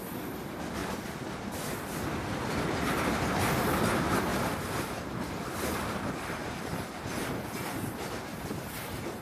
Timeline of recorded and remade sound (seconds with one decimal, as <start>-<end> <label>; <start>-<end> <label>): 0.0-0.8 recorded; 0.8-2.7 remade; 2.7-4.3 recorded; 4.3-6.9 remade; 6.9-9.2 recorded